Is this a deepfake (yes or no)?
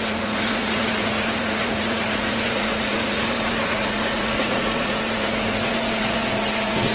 yes